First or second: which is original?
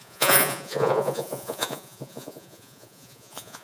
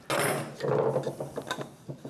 second